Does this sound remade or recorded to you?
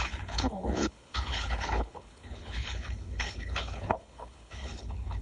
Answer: remade